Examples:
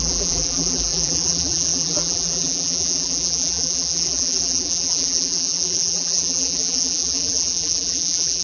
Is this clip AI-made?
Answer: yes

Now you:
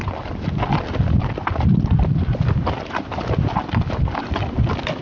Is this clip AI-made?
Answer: yes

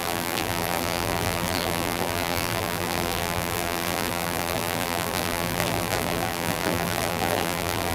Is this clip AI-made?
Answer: yes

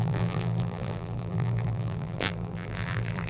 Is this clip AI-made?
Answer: yes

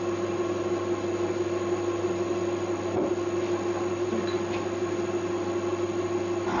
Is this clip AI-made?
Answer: no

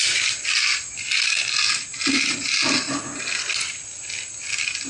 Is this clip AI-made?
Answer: no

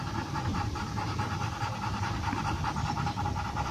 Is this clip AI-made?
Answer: yes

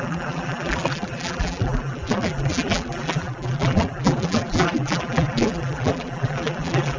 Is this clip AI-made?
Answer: yes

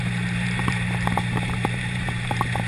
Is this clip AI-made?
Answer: yes